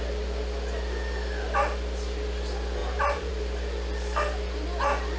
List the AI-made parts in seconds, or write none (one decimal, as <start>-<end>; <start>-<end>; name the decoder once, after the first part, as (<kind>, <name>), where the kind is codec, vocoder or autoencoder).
2.8-3.3 (vocoder, BigVGAN v2)